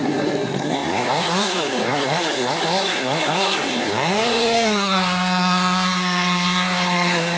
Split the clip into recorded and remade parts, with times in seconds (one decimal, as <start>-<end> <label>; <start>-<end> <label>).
0.0-7.4 remade